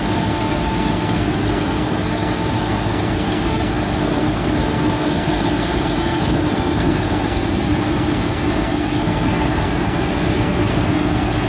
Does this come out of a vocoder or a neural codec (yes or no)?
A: yes